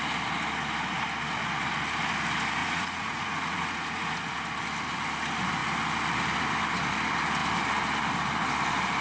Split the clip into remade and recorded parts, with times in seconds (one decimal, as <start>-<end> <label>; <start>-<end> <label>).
0.0-2.6 recorded; 2.6-4.2 remade; 4.2-9.0 recorded